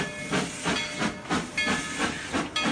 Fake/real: real